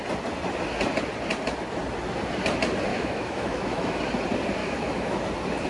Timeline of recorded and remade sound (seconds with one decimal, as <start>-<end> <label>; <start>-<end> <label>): 0.0-2.9 recorded; 2.9-4.0 remade; 4.0-4.6 recorded; 4.6-5.2 remade; 5.2-5.7 recorded